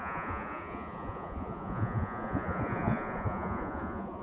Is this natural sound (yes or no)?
no